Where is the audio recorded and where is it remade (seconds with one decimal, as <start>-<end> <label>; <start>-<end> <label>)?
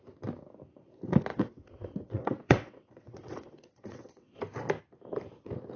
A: 0.0-1.3 recorded; 1.3-4.4 remade; 4.4-5.8 recorded